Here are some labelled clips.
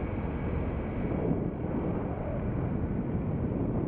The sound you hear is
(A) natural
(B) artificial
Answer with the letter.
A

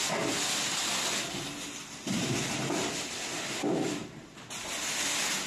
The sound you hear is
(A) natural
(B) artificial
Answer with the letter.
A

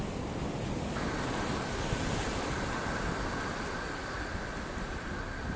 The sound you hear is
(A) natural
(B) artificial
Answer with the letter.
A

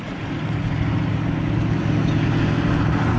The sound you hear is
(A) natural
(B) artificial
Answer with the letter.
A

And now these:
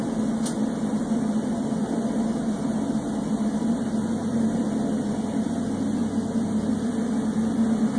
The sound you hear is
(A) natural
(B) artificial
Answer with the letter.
A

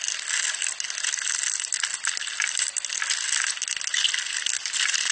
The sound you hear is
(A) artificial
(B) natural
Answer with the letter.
B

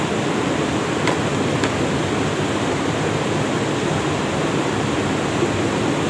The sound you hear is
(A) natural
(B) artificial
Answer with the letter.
A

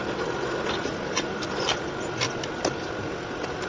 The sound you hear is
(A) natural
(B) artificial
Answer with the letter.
A